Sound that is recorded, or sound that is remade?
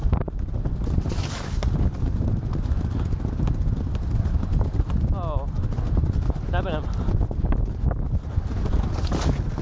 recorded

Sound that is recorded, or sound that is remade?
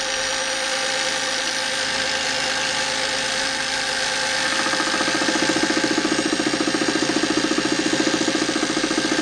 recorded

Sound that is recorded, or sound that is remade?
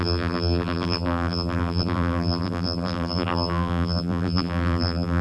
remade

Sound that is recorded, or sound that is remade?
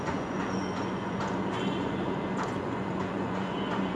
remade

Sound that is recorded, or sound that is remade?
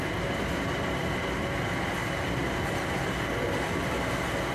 recorded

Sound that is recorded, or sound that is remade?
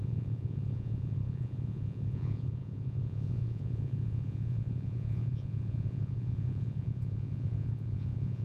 remade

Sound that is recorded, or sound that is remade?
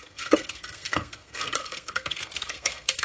remade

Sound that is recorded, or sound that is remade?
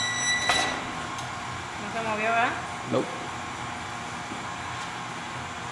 recorded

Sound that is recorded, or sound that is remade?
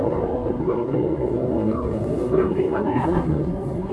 remade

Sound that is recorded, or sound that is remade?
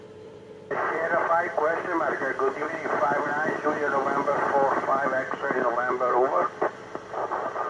remade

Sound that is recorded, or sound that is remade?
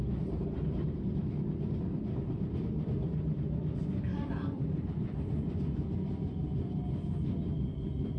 remade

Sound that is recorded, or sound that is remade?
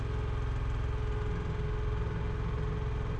recorded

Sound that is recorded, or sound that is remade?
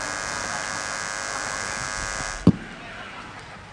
recorded